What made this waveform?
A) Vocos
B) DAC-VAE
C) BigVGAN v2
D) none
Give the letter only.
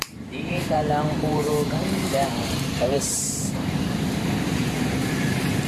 C